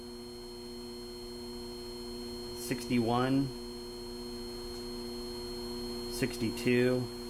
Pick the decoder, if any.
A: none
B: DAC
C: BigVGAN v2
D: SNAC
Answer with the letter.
A